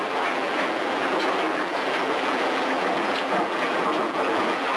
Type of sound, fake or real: fake